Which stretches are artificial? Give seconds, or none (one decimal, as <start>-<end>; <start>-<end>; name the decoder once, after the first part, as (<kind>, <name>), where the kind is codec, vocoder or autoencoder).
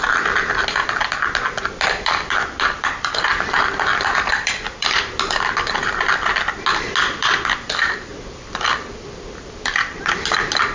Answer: 0.0-6.3 (vocoder, BigVGAN v2); 7.0-10.7